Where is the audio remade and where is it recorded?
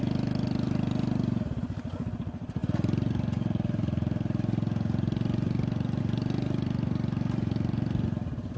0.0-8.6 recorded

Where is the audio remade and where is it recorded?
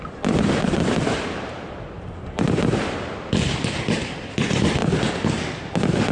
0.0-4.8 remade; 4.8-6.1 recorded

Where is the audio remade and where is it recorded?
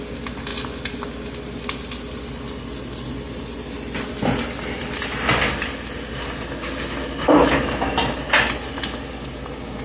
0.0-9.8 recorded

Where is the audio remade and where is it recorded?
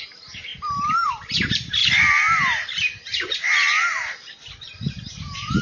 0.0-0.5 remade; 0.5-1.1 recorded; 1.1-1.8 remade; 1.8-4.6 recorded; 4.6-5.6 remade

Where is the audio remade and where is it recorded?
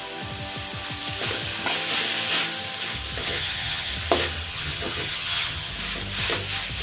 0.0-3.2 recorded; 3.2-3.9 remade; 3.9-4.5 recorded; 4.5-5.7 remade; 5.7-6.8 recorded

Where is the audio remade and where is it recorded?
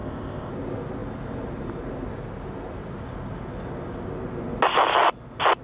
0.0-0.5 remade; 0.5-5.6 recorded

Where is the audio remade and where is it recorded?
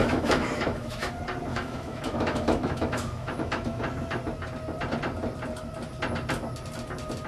0.0-1.1 remade; 1.1-1.5 recorded; 1.5-3.8 remade; 3.8-7.3 recorded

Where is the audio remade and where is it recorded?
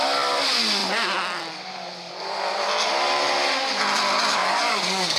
0.0-4.3 recorded; 4.3-5.2 remade